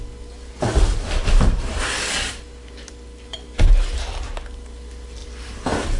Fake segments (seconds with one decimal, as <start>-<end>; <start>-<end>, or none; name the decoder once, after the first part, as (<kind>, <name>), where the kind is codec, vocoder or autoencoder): none